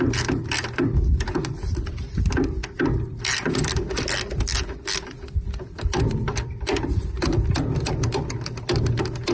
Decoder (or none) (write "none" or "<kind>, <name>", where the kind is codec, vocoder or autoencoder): none